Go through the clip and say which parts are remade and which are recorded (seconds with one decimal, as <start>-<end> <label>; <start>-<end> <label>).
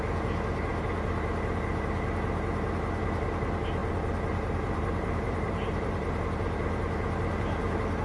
0.0-3.8 recorded; 3.8-6.2 remade; 6.2-8.0 recorded